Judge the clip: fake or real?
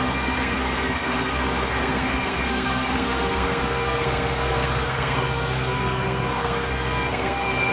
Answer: fake